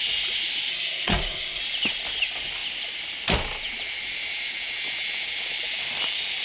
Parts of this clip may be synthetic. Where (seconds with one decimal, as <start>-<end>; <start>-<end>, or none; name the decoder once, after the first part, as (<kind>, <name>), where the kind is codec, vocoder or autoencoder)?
0.7-1.6 (codec, SNAC)